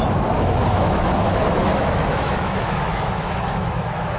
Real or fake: fake